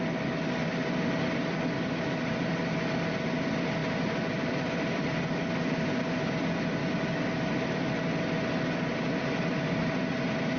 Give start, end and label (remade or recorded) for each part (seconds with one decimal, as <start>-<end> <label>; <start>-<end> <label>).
0.0-1.4 recorded; 1.4-2.2 remade; 2.2-3.8 recorded; 3.8-5.5 remade; 5.5-10.6 recorded